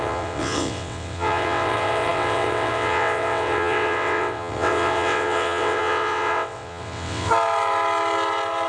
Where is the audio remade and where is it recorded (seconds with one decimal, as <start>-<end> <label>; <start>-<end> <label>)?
0.0-7.3 remade; 7.3-8.7 recorded